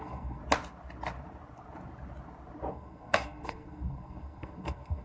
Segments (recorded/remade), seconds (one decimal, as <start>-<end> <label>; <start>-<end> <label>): 0.0-0.4 remade; 0.4-2.7 recorded; 2.7-5.0 remade